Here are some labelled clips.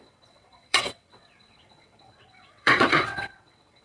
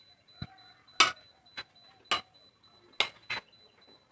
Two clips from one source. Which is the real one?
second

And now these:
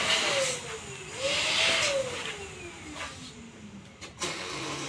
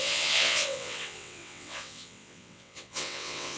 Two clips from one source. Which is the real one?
first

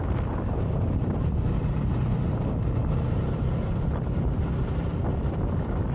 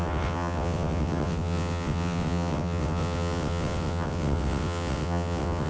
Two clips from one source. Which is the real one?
first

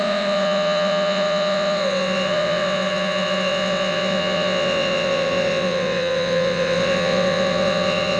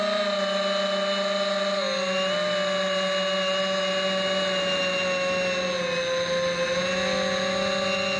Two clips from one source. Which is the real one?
second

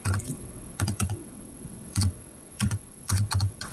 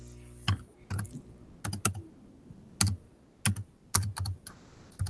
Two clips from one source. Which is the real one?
second